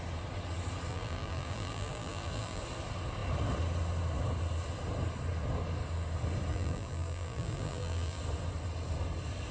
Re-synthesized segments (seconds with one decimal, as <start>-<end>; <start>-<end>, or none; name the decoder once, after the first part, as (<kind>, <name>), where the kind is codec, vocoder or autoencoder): 0.9-2.6 (vocoder, BigVGAN v2); 6.5-8.2